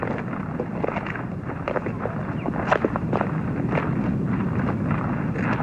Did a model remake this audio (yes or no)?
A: no